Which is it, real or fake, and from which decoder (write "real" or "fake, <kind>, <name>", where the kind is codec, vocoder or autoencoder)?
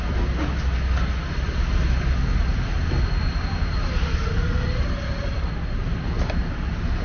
real